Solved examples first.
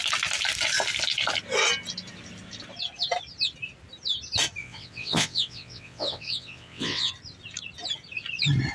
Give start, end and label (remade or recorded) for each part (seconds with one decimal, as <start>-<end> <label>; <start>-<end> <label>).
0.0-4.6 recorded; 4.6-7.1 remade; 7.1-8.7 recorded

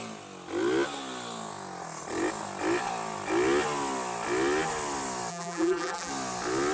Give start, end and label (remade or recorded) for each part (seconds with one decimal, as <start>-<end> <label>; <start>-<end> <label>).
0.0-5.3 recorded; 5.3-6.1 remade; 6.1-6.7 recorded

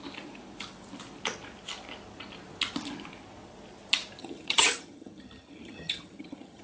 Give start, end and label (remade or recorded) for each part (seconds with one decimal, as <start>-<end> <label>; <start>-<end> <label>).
0.0-4.2 recorded; 4.2-6.6 remade

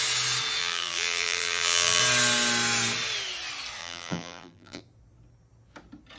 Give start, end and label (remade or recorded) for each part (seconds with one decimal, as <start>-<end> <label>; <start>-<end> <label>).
0.0-0.6 recorded; 0.6-2.0 remade; 2.0-3.8 recorded; 3.8-4.8 remade; 4.8-6.2 recorded

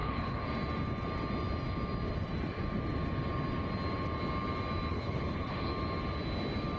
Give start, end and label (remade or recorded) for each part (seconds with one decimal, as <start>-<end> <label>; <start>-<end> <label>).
0.0-0.5 remade; 0.5-4.9 recorded; 4.9-5.7 remade; 5.7-6.8 recorded